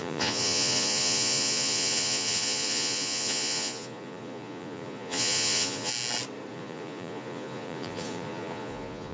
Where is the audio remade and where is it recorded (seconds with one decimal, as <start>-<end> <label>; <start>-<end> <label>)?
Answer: 0.0-5.9 remade; 5.9-6.5 recorded; 6.5-9.1 remade